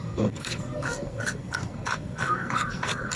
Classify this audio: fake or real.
fake